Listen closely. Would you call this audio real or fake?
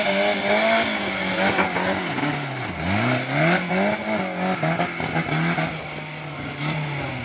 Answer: real